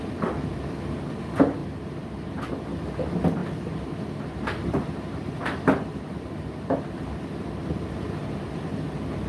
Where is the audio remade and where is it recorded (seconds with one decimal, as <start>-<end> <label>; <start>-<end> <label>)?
0.0-1.6 recorded; 1.6-2.5 remade; 2.5-3.4 recorded; 3.4-8.2 remade; 8.2-9.3 recorded